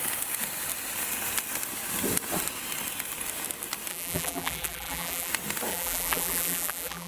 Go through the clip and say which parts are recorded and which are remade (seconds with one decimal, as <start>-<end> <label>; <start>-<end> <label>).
0.0-3.9 recorded; 3.9-5.3 remade; 5.3-5.7 recorded; 5.7-7.1 remade